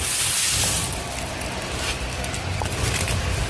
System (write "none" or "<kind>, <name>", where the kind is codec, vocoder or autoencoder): none